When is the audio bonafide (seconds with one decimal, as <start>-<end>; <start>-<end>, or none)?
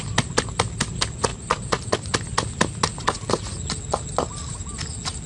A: 0.0-5.3